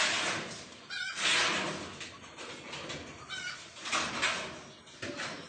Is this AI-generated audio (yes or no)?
no